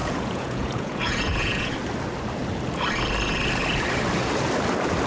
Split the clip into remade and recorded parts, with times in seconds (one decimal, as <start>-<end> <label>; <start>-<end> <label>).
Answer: 0.0-1.7 remade; 1.7-5.1 recorded